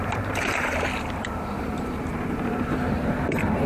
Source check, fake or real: fake